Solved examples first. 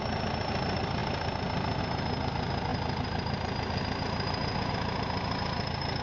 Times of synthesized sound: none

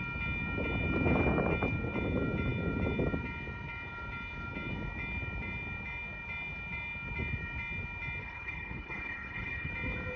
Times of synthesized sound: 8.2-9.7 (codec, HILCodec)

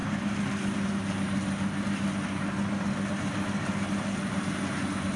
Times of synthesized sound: none

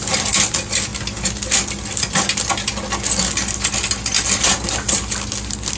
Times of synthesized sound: none

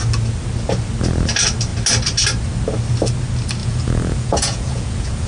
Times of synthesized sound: 3.6-5.3 (vocoder, Vocos)

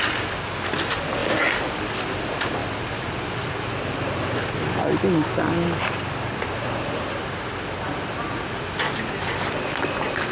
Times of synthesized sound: none